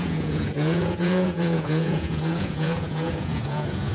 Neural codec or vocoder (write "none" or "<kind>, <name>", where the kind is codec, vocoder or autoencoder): vocoder, Vocos